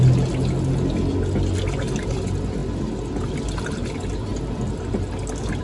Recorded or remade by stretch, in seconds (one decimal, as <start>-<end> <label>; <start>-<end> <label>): 0.0-5.6 recorded

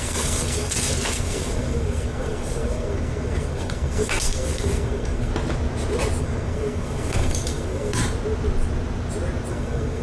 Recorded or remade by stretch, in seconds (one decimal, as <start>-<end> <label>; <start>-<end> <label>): 0.0-5.3 remade; 5.3-6.2 recorded; 6.2-8.0 remade; 8.0-9.5 recorded; 9.5-10.0 remade

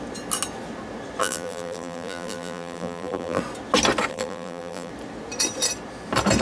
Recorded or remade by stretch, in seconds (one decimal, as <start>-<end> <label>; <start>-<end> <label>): 0.0-1.2 recorded; 1.2-3.4 remade; 3.4-4.1 recorded; 4.1-4.9 remade; 4.9-6.4 recorded

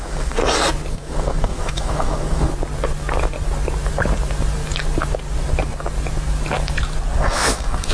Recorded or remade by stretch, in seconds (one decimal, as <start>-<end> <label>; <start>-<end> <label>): 0.0-0.4 remade; 0.4-0.9 recorded; 0.9-2.5 remade; 2.5-7.2 recorded; 7.2-7.9 remade

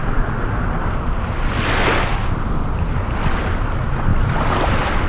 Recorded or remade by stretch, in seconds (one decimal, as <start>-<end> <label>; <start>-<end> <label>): 0.0-5.1 recorded

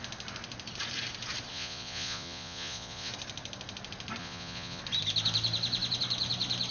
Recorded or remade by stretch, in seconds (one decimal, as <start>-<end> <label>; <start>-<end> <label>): 0.0-1.5 recorded; 1.5-3.1 remade; 3.1-4.2 recorded; 4.2-4.8 remade; 4.8-6.7 recorded

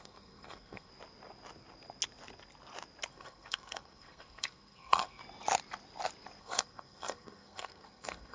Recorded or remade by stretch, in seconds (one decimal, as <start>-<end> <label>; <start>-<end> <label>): 0.0-0.9 remade; 0.9-3.1 recorded; 3.1-5.2 remade; 5.2-6.4 recorded; 6.4-8.3 remade